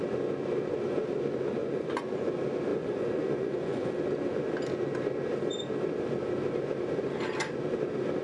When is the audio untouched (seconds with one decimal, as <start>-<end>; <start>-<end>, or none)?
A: 0.0-1.6; 2.3-2.7; 3.9-8.2